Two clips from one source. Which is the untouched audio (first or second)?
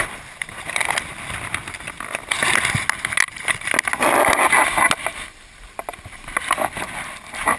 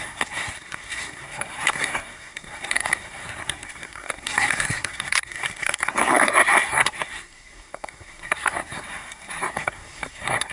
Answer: first